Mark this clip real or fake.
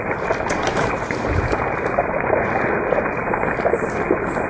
real